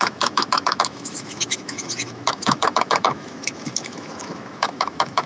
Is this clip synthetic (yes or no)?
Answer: yes